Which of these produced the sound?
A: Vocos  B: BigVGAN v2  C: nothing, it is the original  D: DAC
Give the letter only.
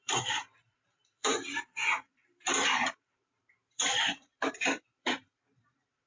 B